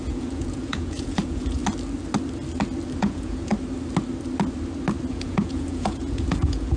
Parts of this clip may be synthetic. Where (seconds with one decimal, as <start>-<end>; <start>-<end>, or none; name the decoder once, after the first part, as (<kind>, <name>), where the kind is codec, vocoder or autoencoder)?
0.0-1.6 (vocoder, Vocos); 3.0-3.5; 5.1-6.8